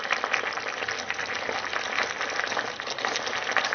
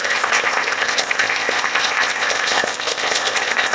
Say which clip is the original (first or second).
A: first